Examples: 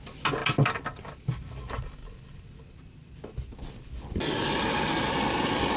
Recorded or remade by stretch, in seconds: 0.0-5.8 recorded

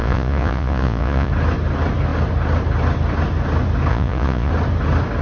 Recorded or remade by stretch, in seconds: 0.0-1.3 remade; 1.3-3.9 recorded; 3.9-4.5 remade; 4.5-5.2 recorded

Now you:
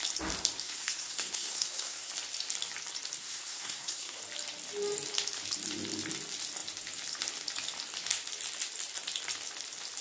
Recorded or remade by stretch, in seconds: 0.0-0.6 recorded; 0.6-2.1 remade; 2.1-3.2 recorded; 3.2-4.2 remade; 4.2-10.0 recorded

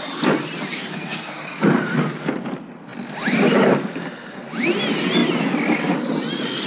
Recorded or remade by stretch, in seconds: 0.0-0.7 recorded; 0.7-1.4 remade; 1.4-6.7 recorded

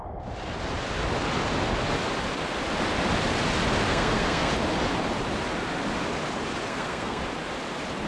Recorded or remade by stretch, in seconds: 0.0-3.9 recorded; 3.9-4.5 remade; 4.5-6.7 recorded; 6.7-7.2 remade; 7.2-8.1 recorded

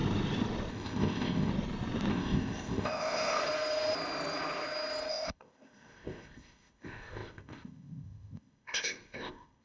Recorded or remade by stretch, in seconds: 0.0-0.7 recorded; 0.7-1.5 remade; 1.5-2.1 recorded; 2.1-3.4 remade; 3.4-5.1 recorded; 5.1-9.6 remade